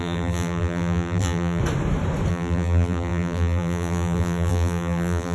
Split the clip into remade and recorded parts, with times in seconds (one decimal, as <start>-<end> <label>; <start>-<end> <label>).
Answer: 0.0-1.6 remade; 1.6-2.3 recorded; 2.3-5.3 remade